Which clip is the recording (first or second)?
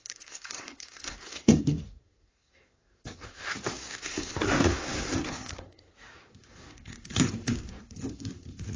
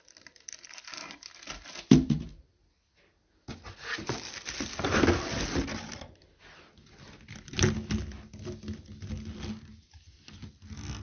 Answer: second